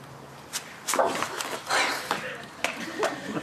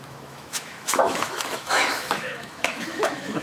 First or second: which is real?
first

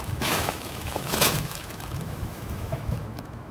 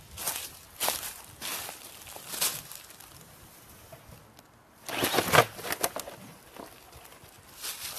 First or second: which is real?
second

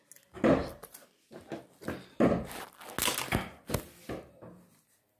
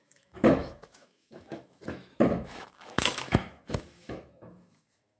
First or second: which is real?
first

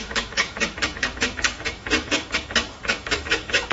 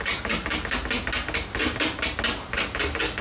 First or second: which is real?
second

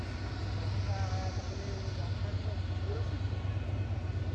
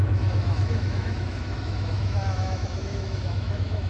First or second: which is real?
first